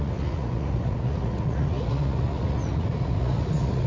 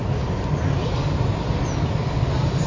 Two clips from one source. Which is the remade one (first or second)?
first